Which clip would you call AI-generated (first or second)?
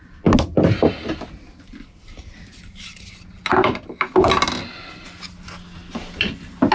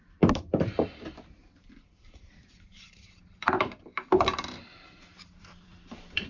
second